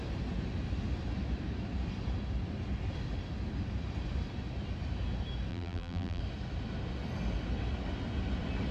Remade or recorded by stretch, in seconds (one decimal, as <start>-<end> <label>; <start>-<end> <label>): 0.0-5.5 recorded; 5.5-6.2 remade; 6.2-8.7 recorded